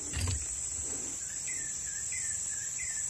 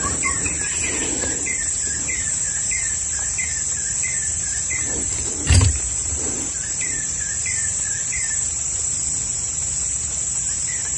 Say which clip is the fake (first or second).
second